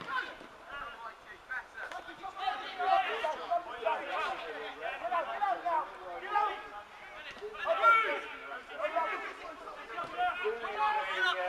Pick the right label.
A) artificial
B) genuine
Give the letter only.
B